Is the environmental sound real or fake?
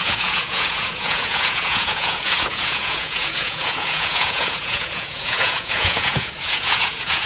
fake